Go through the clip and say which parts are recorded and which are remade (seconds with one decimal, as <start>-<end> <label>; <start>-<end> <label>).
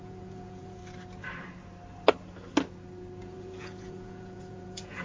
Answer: 0.0-0.8 remade; 0.8-3.2 recorded; 3.2-5.0 remade